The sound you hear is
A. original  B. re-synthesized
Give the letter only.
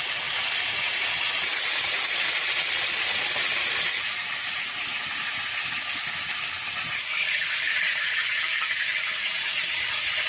B